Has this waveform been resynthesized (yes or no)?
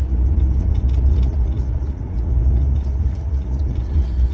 yes